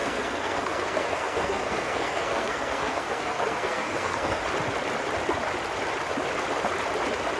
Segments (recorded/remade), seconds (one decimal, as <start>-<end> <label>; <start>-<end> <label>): 0.0-4.4 remade; 4.4-7.4 recorded